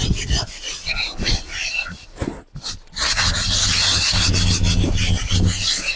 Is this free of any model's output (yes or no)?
yes